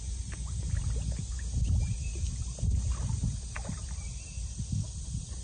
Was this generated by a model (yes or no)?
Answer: no